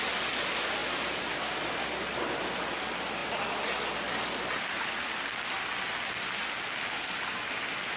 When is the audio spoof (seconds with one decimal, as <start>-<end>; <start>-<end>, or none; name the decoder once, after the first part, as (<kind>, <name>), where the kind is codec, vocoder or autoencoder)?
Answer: none